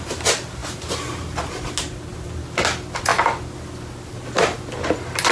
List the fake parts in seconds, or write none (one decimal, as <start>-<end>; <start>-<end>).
none